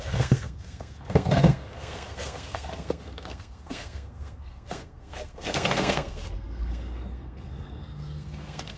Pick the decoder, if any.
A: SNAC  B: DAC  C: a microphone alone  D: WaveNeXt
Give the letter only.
A